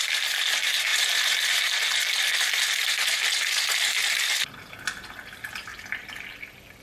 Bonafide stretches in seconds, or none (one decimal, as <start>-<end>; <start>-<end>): 0.0-6.8